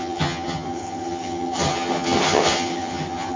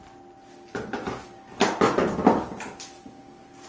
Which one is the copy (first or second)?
first